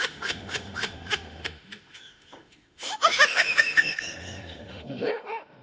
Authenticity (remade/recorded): remade